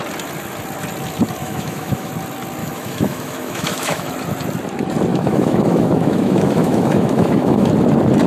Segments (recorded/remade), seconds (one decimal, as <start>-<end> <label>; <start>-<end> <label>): 0.0-1.4 recorded; 1.4-2.1 remade; 2.1-2.6 recorded; 2.6-4.1 remade; 4.1-5.1 recorded; 5.1-7.7 remade; 7.7-8.3 recorded